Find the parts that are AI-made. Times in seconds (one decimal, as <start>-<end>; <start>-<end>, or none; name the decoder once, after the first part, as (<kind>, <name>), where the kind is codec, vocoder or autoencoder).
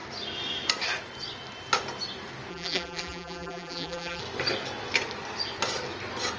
2.5-4.2 (vocoder, BigVGAN v2)